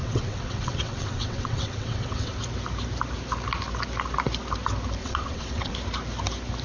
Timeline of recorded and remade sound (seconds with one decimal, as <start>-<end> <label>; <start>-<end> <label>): 0.0-2.4 remade; 2.4-5.0 recorded; 5.0-5.7 remade; 5.7-6.6 recorded